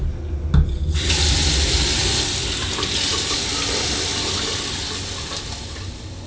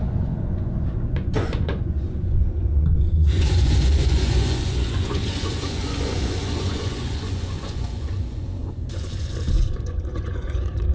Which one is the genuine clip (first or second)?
first